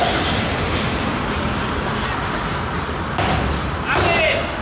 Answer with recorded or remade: recorded